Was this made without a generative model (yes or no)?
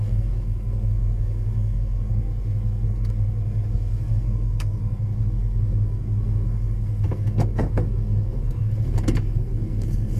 no